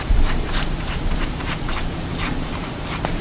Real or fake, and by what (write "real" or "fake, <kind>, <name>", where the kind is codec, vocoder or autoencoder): fake, vocoder, BigVGAN v2